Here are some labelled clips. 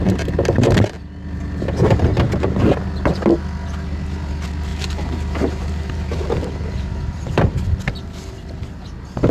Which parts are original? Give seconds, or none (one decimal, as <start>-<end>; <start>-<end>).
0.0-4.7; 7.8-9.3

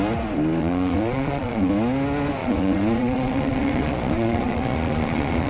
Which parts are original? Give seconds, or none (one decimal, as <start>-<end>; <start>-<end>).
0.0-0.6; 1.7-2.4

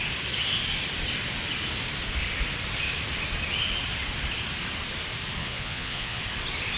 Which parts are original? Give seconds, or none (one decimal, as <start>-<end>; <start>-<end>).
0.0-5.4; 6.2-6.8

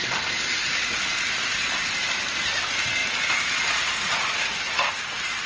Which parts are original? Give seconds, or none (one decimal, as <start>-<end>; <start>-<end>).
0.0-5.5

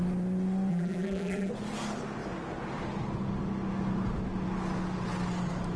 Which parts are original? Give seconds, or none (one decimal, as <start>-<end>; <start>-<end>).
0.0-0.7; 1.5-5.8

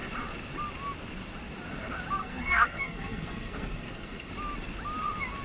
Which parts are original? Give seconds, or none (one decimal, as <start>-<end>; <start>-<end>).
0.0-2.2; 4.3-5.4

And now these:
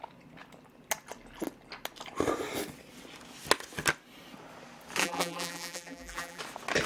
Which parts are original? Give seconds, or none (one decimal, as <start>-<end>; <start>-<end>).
0.0-5.0; 6.4-6.9

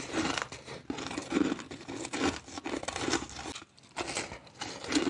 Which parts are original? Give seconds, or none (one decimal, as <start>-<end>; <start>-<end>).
0.0-5.1